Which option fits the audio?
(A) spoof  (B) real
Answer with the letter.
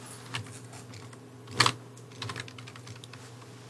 B